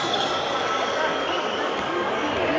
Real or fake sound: fake